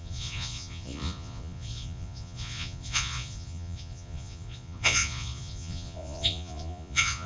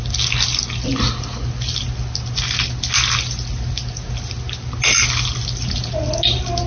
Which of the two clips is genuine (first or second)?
second